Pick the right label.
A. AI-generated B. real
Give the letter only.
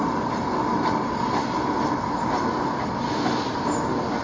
B